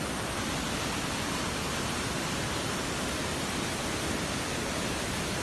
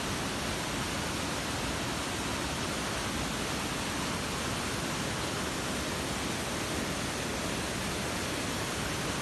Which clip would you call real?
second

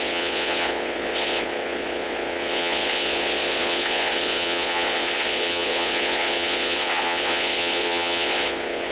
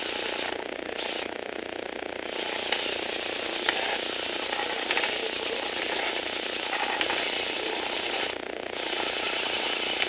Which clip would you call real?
second